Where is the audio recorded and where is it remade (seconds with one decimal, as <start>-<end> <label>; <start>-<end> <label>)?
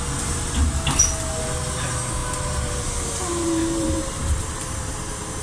0.0-2.2 recorded; 2.2-5.4 remade